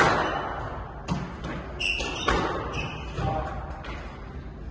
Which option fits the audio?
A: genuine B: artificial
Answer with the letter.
A